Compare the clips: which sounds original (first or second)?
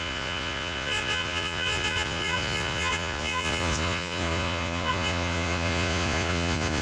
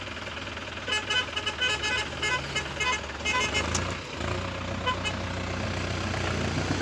second